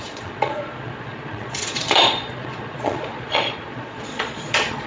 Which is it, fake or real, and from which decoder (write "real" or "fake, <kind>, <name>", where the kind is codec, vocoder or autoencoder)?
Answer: fake, vocoder, Vocos